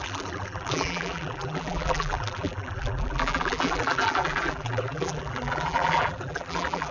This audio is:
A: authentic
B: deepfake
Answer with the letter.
B